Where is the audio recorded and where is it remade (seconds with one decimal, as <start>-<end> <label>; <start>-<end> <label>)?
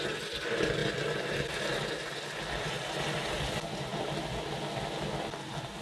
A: 0.0-5.8 recorded